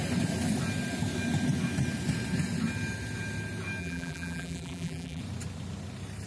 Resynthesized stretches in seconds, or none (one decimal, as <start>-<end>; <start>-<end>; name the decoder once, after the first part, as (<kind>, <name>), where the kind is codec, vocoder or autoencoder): 3.8-5.2 (vocoder, BigVGAN v2)